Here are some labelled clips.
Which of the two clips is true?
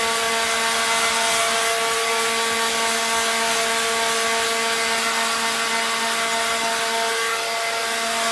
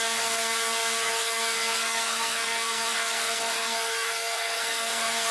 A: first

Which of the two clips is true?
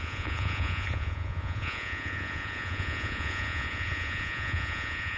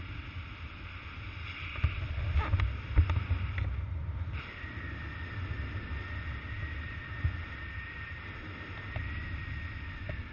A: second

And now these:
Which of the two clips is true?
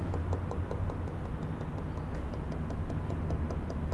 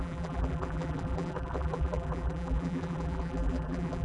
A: first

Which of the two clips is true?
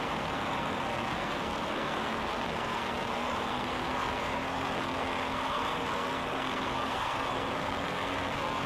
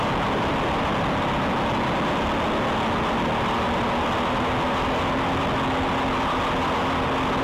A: second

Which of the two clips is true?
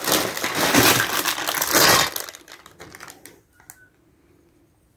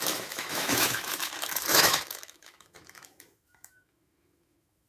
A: first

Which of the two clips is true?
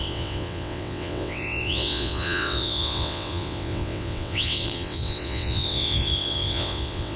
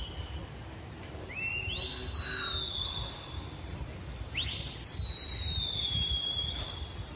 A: second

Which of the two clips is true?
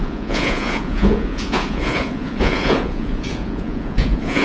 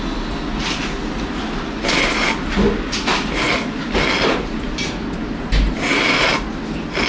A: second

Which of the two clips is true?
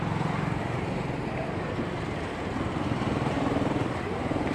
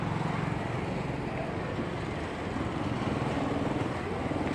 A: second